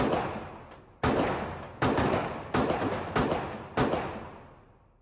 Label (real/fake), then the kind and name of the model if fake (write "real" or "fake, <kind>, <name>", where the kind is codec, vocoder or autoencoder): real